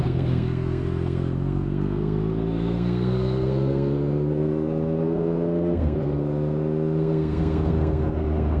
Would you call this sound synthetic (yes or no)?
yes